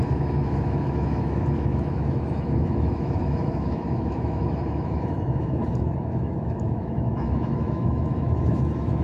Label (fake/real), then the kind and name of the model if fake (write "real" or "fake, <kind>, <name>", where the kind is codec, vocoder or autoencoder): fake, autoencoder, DAC-VAE